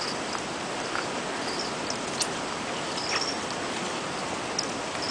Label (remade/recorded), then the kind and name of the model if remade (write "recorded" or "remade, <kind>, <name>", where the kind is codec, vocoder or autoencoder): recorded